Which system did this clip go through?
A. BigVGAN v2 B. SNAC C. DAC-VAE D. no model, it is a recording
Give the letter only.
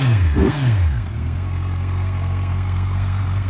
B